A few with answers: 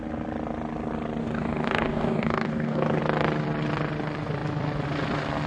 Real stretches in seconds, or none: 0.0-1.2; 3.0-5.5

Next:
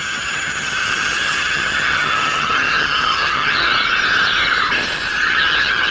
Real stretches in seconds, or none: 3.7-5.2

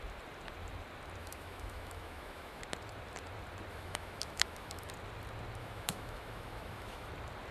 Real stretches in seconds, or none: 0.0-1.2; 2.6-3.7; 4.9-5.6; 7.1-7.5